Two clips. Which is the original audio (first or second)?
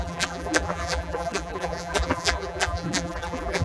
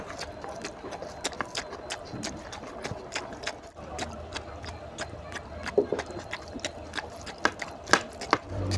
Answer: second